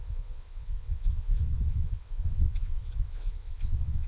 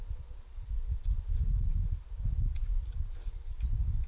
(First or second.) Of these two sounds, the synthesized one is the first